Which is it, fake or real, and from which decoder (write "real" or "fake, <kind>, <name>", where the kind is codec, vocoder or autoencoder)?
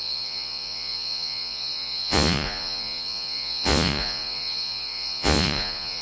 fake, vocoder, Vocos